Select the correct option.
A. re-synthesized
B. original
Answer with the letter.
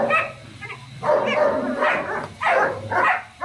B